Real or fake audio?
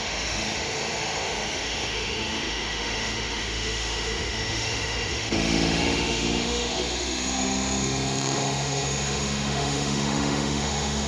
fake